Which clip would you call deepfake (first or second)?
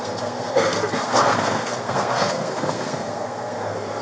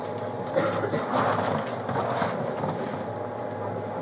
first